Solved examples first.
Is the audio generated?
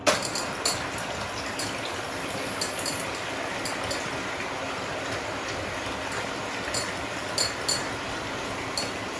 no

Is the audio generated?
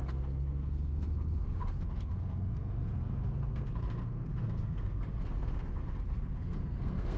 yes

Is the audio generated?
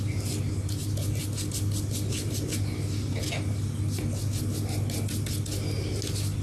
no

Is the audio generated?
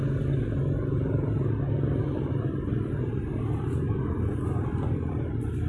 no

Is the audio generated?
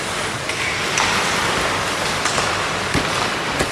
no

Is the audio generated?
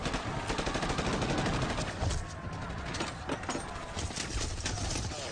no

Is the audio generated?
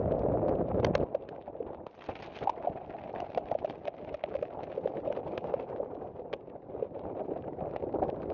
no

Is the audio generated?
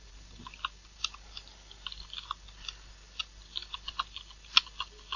no